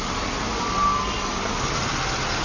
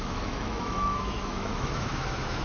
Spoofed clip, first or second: second